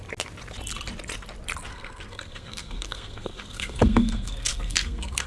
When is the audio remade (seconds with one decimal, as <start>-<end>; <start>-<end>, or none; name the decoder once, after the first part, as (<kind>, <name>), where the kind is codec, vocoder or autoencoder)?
1.7-5.3 (codec, SNAC)